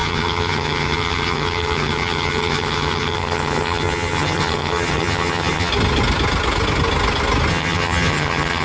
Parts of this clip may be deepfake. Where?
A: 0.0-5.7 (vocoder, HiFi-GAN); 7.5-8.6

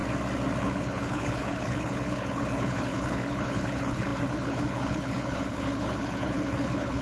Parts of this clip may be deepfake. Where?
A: 0.6-7.0 (codec, HILCodec)

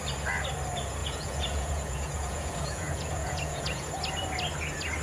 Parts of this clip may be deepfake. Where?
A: 1.0-3.9 (vocoder, Vocos)

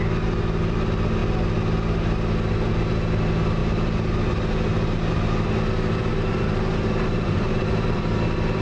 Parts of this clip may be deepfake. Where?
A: 6.1-8.0 (vocoder, BigVGAN v2)

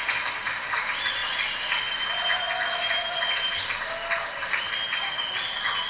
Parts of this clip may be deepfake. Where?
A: none

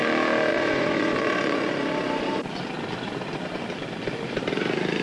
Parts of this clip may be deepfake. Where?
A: 0.5-1.7 (vocoder, Vocos)